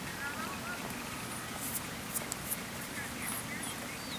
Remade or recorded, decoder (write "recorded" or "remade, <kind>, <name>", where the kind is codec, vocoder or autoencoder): recorded